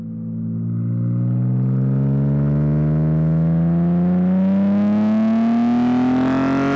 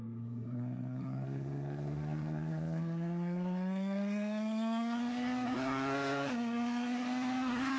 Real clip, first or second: first